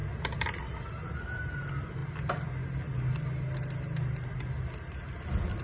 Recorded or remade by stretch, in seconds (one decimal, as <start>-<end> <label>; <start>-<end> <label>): 0.0-5.6 recorded